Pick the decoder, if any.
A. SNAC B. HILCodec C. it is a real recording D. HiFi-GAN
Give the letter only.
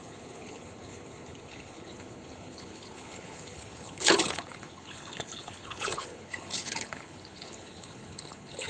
B